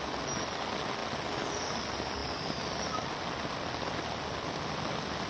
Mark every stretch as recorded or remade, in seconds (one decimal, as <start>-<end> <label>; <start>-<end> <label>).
0.0-5.3 recorded